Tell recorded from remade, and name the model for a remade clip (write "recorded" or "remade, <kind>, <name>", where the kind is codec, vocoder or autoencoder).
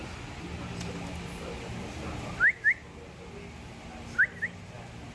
recorded